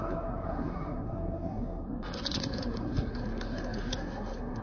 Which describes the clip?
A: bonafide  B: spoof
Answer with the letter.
B